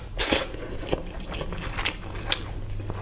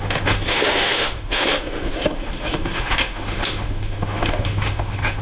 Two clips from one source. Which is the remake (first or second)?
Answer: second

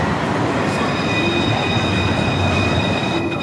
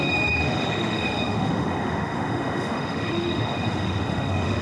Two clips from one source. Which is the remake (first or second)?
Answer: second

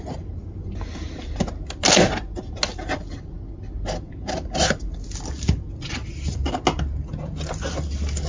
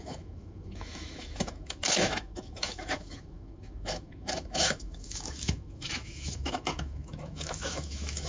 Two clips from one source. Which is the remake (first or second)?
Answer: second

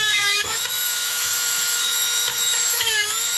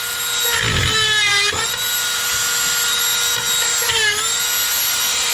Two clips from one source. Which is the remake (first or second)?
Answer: first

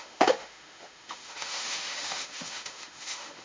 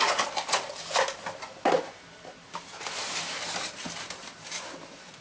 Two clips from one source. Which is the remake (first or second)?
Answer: first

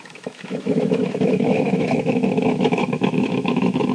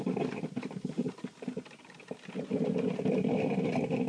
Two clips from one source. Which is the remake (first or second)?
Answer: first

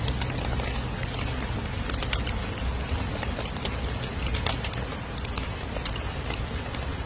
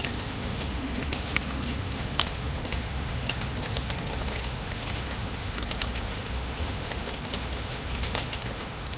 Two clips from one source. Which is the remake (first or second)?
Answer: second